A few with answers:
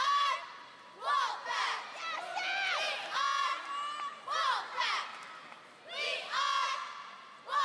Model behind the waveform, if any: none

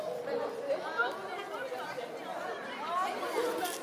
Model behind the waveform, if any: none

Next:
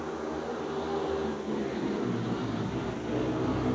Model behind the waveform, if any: none